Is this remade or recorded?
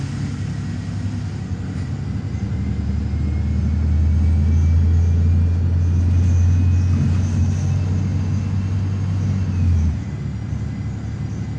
recorded